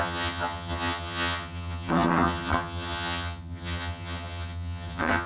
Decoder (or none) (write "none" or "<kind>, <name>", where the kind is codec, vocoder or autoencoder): vocoder, HiFi-GAN